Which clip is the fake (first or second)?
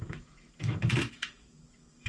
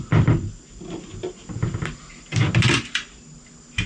first